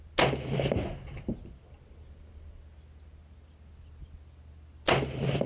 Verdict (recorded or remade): recorded